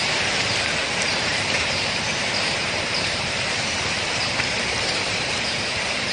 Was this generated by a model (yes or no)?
yes